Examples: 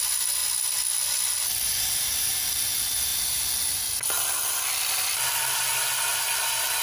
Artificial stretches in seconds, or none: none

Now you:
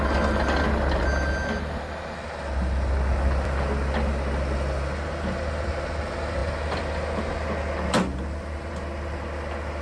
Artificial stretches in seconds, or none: none

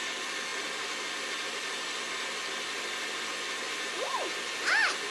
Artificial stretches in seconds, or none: none

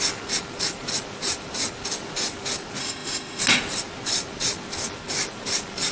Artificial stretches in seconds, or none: 2.8-3.4 (autoencoder, DAC-VAE)